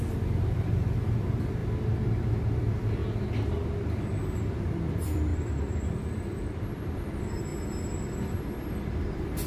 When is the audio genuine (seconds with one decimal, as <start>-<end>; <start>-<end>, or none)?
1.6-2.6; 3.0-4.4; 7.5-9.5